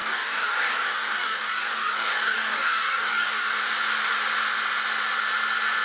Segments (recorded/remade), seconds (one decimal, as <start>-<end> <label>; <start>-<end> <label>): 0.0-3.5 remade; 3.5-5.8 recorded